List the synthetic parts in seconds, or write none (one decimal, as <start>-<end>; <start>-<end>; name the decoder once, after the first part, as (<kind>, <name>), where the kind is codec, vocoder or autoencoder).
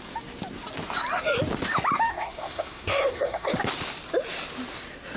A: 2.1-3.5 (codec, SNAC)